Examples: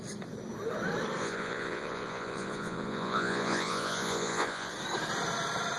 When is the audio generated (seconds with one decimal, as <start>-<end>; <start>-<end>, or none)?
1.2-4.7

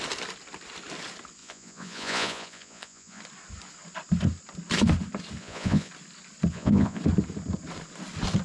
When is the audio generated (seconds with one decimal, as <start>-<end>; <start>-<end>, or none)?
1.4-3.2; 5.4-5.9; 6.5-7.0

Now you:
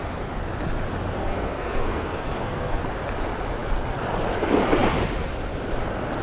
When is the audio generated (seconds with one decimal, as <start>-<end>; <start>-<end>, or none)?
1.2-2.8

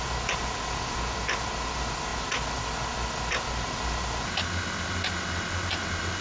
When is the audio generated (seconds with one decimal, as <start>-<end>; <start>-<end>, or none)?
none

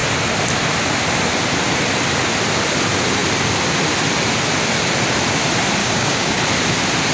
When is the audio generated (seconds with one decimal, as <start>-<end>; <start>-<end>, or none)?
5.8-6.4

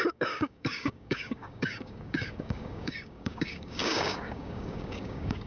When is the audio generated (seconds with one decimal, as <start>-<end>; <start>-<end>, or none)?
0.0-5.5

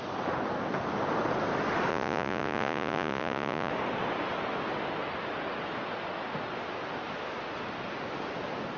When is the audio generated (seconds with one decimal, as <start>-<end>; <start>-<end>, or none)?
1.9-3.7

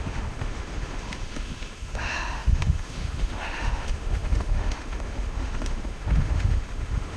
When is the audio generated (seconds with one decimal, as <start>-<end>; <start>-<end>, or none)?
0.0-7.2